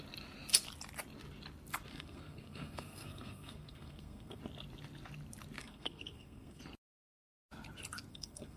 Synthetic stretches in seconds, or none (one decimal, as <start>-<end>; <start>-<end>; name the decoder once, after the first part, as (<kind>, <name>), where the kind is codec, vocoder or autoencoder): 1.9-4.4 (codec, SNAC); 5.6-6.6; 8.1-8.6